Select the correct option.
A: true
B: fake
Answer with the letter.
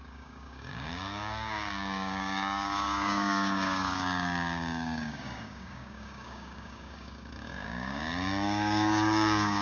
B